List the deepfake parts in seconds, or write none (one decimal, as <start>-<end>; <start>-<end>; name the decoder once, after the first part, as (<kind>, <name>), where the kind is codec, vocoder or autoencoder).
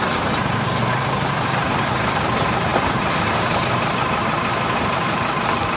0.0-5.8 (vocoder, BigVGAN v2)